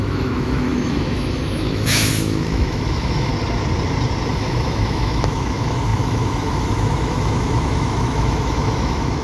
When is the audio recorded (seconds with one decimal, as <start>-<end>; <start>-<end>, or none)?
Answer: 3.3-4.3